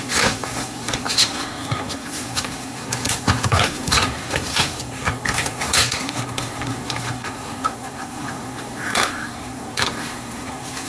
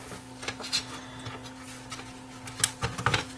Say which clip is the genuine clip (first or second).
second